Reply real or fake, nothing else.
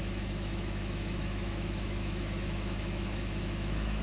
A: fake